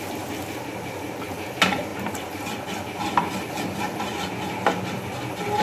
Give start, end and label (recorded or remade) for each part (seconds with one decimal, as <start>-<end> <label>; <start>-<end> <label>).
0.0-5.6 recorded